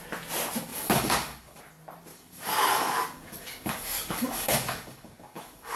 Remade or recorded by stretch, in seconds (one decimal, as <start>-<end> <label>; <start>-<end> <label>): 0.0-0.7 recorded; 0.7-1.6 remade; 1.6-2.1 recorded; 2.1-5.8 remade